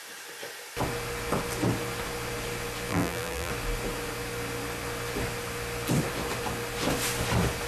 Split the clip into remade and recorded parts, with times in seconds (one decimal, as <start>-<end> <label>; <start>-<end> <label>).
0.0-2.9 recorded; 2.9-3.5 remade; 3.5-7.7 recorded